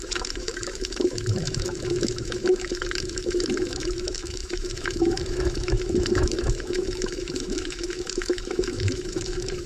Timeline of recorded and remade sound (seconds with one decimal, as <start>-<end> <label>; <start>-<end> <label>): 0.0-9.7 remade